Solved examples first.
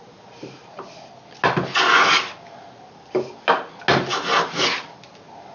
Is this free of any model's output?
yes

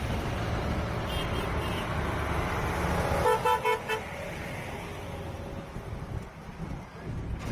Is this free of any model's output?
yes